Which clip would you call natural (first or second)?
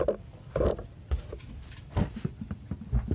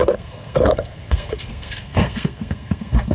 first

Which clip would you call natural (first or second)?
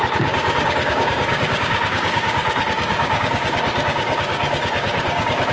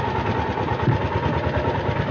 second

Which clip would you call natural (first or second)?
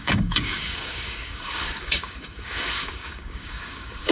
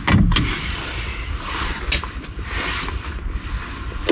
second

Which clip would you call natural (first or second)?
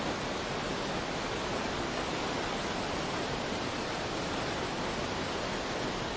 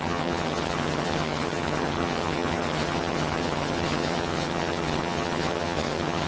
first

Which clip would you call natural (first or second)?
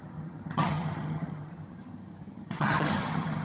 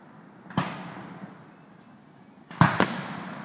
second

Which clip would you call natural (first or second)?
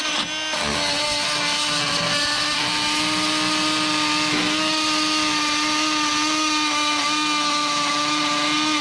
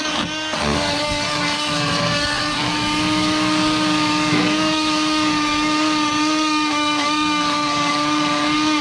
first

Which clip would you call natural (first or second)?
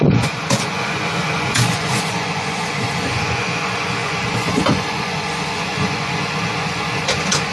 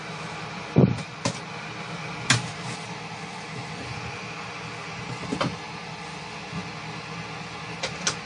second